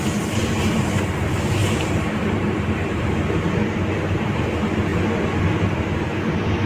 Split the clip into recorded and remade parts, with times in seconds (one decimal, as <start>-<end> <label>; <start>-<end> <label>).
0.0-0.4 recorded; 0.4-1.1 remade; 1.1-1.6 recorded; 1.6-3.3 remade; 3.3-6.7 recorded